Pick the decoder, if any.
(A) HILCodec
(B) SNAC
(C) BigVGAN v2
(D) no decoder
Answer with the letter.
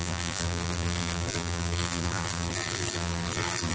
C